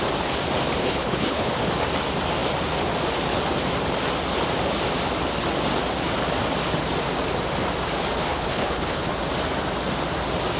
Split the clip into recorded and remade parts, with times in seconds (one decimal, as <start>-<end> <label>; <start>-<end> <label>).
0.0-0.8 recorded; 0.8-1.5 remade; 1.5-8.1 recorded; 8.1-9.1 remade; 9.1-10.6 recorded